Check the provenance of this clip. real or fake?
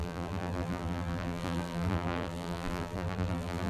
fake